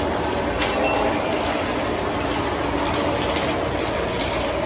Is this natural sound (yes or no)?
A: no